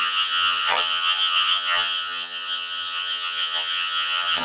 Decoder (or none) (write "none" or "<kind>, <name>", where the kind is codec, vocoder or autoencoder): vocoder, HiFi-GAN